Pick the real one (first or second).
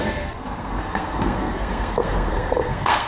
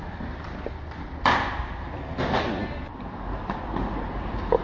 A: second